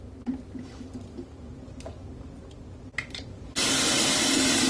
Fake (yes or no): no